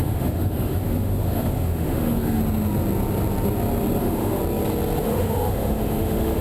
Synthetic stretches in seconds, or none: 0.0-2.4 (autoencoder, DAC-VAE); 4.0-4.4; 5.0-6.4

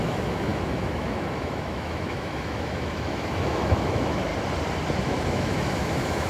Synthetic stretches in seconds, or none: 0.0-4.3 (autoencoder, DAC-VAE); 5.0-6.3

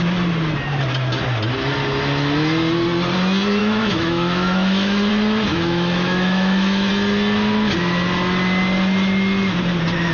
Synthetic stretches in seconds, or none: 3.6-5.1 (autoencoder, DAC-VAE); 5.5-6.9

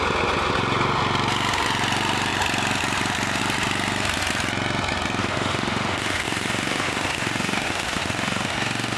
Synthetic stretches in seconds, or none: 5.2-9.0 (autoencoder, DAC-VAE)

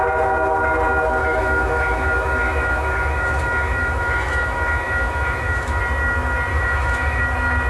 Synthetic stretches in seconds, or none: 1.2-5.8 (autoencoder, DAC-VAE); 6.5-7.2

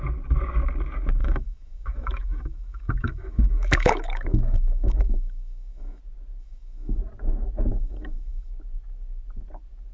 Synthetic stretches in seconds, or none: 1.2-6.0 (autoencoder, DAC-VAE); 6.4-7.0; 7.7-8.5

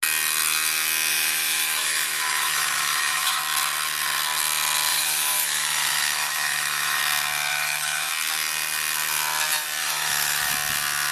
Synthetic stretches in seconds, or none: 1.1-3.4 (autoencoder, DAC-VAE); 4.9-7.0; 7.5-8.1; 9.8-10.5

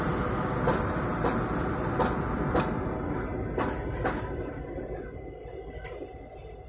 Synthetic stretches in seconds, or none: none